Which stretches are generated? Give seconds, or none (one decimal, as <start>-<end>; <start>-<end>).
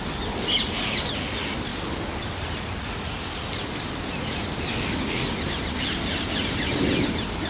none